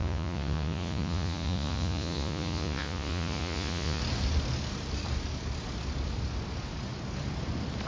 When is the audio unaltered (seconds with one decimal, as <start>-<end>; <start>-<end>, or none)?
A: 4.0-7.9

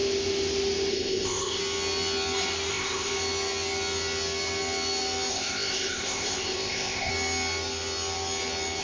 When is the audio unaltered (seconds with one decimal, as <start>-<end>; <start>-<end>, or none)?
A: 0.0-0.9; 1.6-2.7; 3.1-5.3; 7.1-8.8

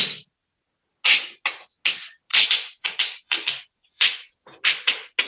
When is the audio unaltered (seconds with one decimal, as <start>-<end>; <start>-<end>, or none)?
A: 0.0-2.3; 4.3-5.3

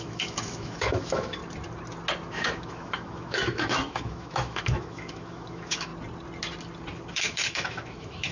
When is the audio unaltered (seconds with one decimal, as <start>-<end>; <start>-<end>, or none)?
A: 1.4-2.3; 5.9-7.1

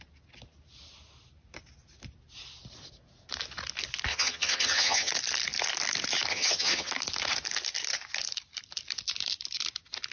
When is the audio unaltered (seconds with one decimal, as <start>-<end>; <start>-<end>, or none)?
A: 0.0-4.1; 5.1-6.3; 6.9-10.1

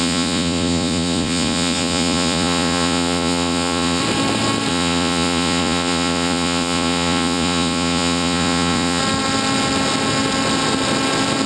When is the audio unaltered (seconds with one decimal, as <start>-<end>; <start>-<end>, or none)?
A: 4.0-4.7; 9.0-11.5